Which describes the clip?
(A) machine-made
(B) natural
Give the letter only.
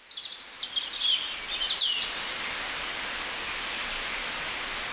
B